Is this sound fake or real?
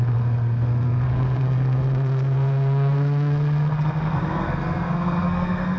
fake